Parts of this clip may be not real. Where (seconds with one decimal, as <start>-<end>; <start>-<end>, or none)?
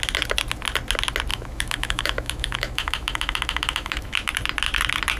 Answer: 1.3-4.3